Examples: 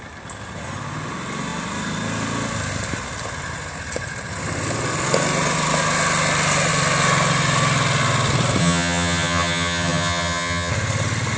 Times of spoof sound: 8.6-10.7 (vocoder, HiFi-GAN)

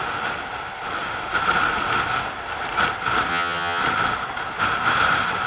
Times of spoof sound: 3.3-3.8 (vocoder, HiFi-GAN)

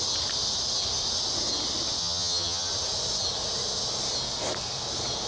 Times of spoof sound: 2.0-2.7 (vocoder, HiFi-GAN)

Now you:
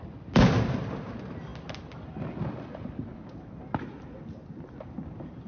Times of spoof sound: none

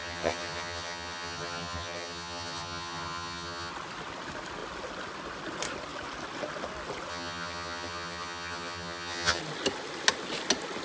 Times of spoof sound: 0.0-3.7 (vocoder, HiFi-GAN); 7.1-9.4